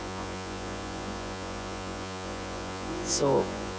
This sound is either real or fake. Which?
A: fake